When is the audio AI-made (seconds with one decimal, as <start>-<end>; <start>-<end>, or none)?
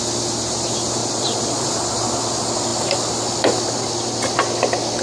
1.0-1.7